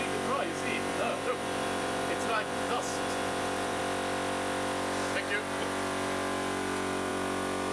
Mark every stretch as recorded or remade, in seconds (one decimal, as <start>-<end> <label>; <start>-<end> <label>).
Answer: 0.0-0.9 recorded; 0.9-3.8 remade; 3.8-7.7 recorded